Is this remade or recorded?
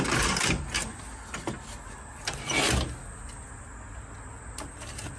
recorded